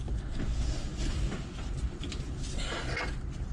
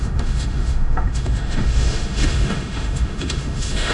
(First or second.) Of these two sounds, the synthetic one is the second